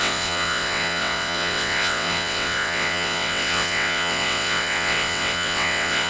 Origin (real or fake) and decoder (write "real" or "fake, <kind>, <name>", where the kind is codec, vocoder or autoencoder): fake, vocoder, WaveNeXt